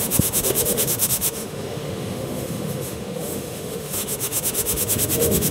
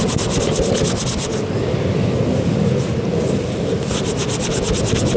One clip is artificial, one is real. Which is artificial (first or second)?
first